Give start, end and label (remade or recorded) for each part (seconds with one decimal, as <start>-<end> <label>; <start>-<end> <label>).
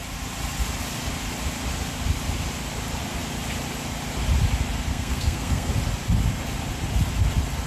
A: 0.0-4.9 recorded; 4.9-5.7 remade; 5.7-7.7 recorded